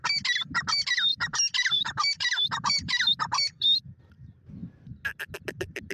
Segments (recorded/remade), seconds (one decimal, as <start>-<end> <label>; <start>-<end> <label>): 0.0-1.1 recorded; 1.1-3.8 remade; 3.8-5.9 recorded